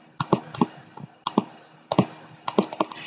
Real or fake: real